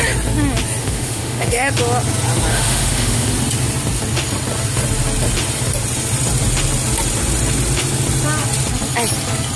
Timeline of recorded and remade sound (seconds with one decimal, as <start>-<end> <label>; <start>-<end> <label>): 0.0-0.8 recorded; 0.8-1.7 remade; 1.7-2.5 recorded; 2.5-3.3 remade; 3.3-9.6 recorded